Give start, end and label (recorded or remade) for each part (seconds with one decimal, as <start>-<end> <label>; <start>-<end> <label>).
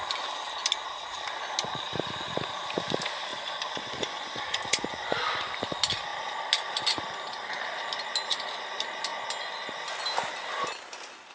0.0-3.3 recorded; 3.3-5.2 remade; 5.2-11.3 recorded